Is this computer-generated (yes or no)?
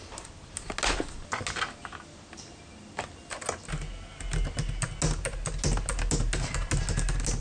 no